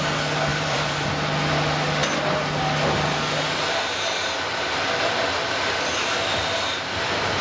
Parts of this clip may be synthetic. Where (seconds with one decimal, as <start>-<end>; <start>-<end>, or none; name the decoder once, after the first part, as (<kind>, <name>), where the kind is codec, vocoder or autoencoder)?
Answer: 0.5-1.1 (vocoder, BigVGAN v2)